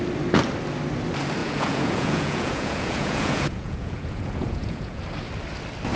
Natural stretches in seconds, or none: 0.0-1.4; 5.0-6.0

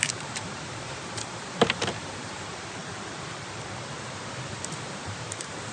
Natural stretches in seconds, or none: 2.8-3.9

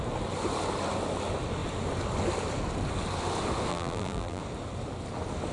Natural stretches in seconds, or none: 0.0-3.7; 4.4-5.5

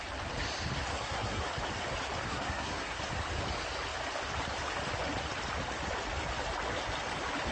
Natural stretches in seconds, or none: 0.0-0.9; 1.4-2.3; 3.0-7.5